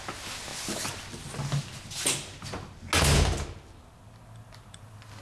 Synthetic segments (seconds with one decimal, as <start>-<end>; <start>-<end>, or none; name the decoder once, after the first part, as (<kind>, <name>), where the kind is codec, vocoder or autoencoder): none